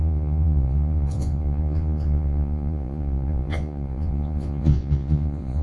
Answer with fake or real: fake